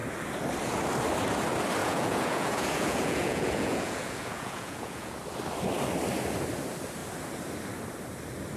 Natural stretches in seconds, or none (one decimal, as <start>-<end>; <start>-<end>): 0.0-1.8; 5.1-8.6